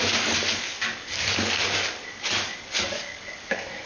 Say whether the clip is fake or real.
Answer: fake